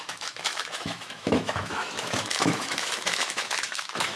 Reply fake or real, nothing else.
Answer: fake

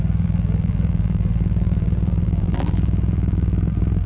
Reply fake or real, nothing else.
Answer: fake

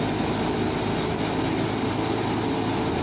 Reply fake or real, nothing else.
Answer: real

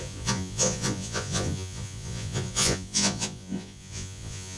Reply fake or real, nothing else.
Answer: fake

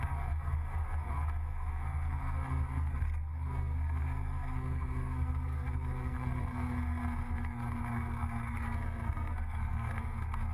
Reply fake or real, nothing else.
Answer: fake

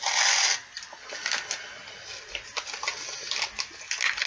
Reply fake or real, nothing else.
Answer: real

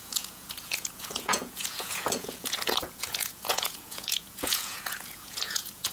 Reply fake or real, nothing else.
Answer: fake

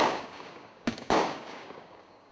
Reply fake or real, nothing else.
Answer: fake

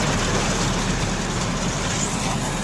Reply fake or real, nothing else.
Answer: real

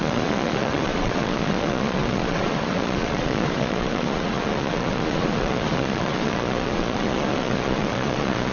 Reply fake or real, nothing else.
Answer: fake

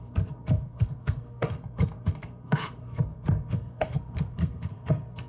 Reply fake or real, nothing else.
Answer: fake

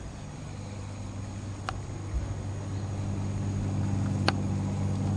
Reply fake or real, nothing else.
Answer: real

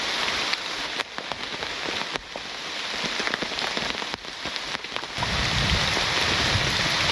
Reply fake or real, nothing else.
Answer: real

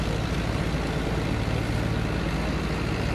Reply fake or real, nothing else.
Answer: real